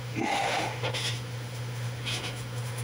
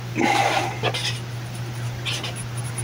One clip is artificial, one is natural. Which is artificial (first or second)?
first